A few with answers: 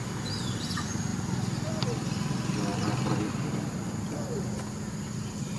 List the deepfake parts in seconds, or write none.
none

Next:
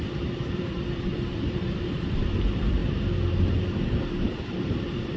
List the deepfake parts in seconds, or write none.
0.0-2.8 (vocoder, BigVGAN v2); 3.6-5.2

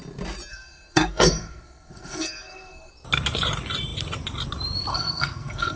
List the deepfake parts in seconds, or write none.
0.5-2.9 (codec, SNAC); 4.9-5.8

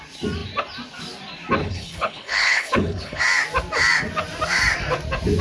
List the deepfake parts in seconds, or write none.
1.6-3.2 (codec, HILCodec)

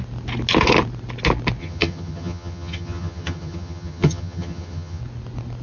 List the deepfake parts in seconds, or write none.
1.6-5.0 (vocoder, HiFi-GAN)

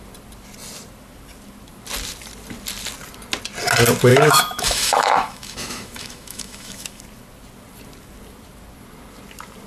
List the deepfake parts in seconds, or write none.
4.1-7.0 (autoencoder, DAC-VAE)